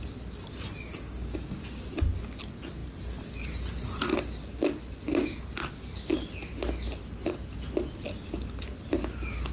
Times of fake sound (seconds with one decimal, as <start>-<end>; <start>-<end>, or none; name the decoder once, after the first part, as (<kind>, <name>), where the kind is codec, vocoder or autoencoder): 1.2-1.8 (codec, DAC)